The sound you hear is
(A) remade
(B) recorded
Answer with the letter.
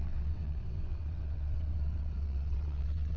A